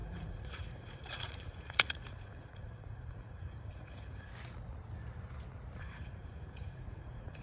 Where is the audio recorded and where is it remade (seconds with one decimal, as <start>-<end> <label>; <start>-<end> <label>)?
0.0-4.3 remade; 4.3-5.8 recorded; 5.8-7.4 remade